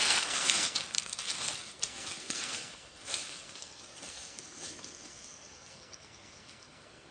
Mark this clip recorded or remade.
remade